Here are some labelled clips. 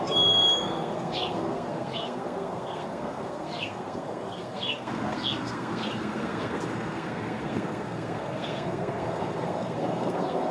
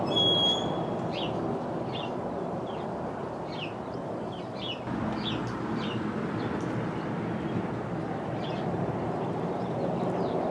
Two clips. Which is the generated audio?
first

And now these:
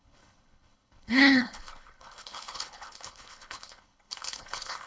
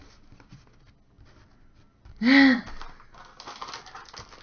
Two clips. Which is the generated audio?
first